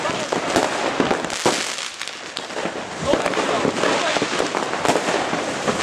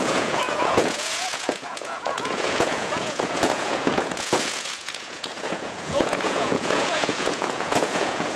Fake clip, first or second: second